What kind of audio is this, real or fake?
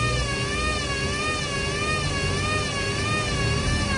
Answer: real